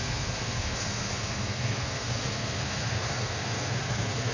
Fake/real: fake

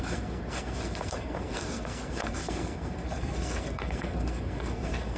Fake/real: fake